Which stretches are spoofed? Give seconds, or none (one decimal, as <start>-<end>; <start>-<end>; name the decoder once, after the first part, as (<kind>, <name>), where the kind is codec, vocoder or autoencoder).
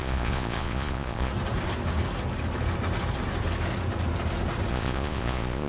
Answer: 0.0-1.3 (vocoder, Vocos); 4.7-5.7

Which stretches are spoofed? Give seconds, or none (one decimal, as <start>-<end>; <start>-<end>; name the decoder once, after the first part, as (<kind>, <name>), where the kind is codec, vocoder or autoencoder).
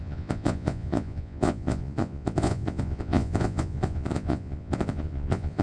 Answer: 0.0-5.6 (vocoder, Vocos)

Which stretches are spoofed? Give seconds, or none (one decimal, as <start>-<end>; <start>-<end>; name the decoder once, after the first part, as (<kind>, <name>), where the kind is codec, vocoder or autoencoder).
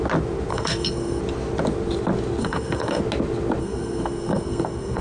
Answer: 0.5-1.2 (codec, SNAC); 2.4-3.0; 3.6-5.0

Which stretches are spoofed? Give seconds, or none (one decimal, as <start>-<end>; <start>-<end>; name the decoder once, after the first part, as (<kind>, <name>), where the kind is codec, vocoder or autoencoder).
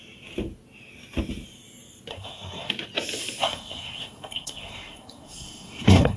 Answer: 2.1-2.7 (codec, SNAC); 3.4-6.2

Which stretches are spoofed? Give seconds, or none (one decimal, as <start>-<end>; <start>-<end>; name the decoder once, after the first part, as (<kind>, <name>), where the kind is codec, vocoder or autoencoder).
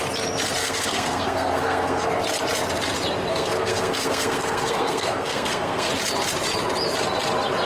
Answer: 0.6-2.1 (codec, SNAC); 3.3-5.9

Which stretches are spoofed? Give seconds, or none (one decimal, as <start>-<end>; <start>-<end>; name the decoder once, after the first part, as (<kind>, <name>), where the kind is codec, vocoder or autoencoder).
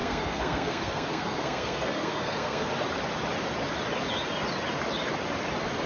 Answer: 0.0-2.7 (codec, SNAC)